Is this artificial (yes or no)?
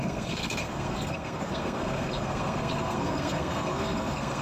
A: yes